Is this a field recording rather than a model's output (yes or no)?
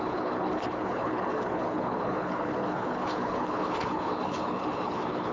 no